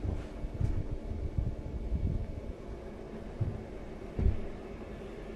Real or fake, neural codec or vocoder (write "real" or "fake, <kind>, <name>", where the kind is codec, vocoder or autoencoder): real